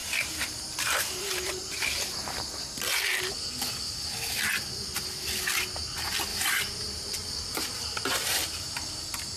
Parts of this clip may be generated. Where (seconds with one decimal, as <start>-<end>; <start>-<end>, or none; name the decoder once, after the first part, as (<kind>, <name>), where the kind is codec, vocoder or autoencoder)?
0.0-2.6 (vocoder, BigVGAN v2); 6.3-8.9